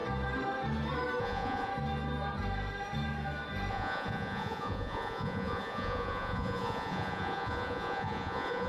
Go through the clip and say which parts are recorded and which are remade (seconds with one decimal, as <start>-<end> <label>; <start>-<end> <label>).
0.0-1.2 recorded; 1.2-1.7 remade; 1.7-3.7 recorded; 3.7-8.7 remade